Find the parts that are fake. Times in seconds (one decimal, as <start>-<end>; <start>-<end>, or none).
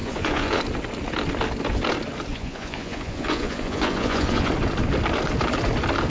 0.0-0.6; 2.3-4.5